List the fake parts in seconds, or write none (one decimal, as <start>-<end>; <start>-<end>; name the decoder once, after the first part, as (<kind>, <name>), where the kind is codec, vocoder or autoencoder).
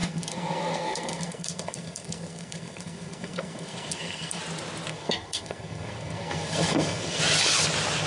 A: 0.0-4.4 (codec, SNAC); 4.9-7.2